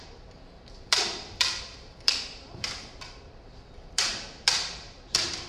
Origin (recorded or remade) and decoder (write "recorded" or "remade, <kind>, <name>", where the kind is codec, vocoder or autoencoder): remade, vocoder, BigVGAN v2